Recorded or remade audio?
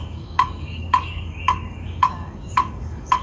remade